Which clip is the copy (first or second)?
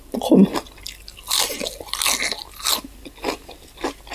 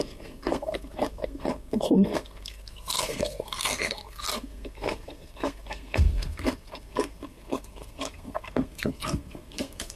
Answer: second